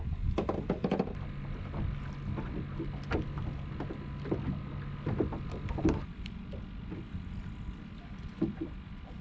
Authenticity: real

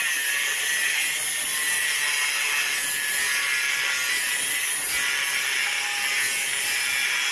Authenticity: real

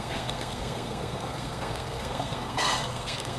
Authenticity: fake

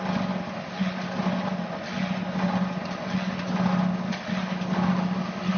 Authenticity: real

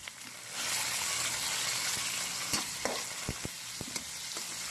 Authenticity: real